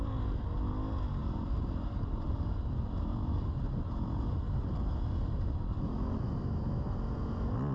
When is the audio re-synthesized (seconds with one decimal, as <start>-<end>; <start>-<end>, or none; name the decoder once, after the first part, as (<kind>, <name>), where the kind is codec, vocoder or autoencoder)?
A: 1.2-5.8 (vocoder, BigVGAN v2)